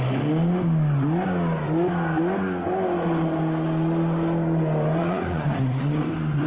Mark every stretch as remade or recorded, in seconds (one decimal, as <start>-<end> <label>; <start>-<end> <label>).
0.0-5.0 recorded; 5.0-6.1 remade; 6.1-6.5 recorded